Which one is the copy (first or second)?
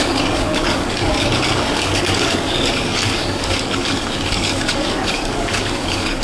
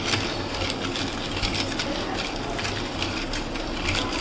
first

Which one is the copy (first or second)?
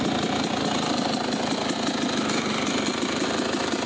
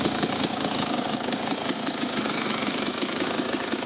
second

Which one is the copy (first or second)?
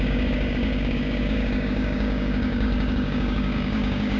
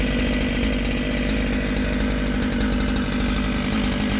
first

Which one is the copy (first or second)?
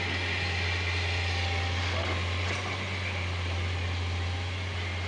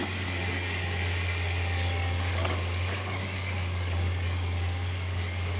second